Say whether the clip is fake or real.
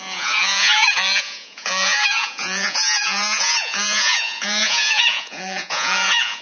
fake